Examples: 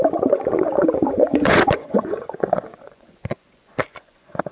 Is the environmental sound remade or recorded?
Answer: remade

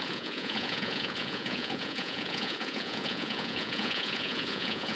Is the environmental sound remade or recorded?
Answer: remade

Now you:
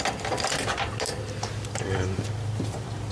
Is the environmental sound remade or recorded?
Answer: recorded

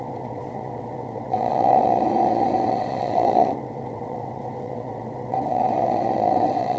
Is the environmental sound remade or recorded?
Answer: remade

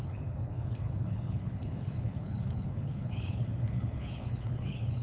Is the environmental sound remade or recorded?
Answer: remade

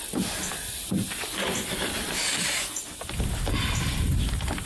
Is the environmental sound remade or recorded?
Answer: recorded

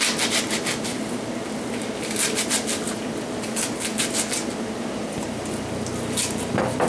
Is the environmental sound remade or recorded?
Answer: recorded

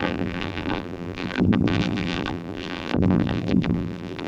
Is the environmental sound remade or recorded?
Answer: remade